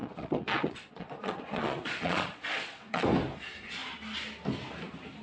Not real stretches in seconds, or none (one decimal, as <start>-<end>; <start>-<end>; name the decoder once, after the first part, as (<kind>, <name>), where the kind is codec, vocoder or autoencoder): 0.0-3.1 (vocoder, Vocos)